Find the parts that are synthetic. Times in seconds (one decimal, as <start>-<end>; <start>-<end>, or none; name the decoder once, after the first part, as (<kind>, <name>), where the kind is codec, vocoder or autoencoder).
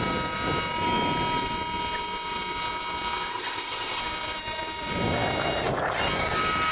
3.3-4.0 (codec, ZipCodec)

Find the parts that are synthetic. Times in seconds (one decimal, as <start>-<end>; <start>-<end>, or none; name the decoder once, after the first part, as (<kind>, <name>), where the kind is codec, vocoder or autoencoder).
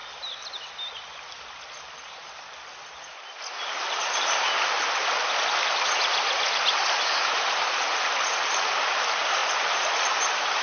none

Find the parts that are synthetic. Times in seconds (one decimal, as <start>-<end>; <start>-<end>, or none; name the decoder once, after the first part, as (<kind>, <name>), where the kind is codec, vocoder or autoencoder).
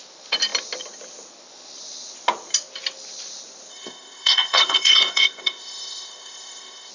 3.7-6.9 (codec, ZipCodec)